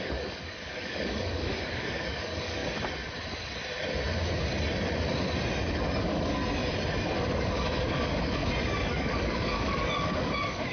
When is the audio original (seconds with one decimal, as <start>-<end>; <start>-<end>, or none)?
2.6-6.0; 6.4-7.4; 8.4-8.9